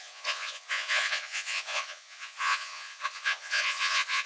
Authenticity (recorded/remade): remade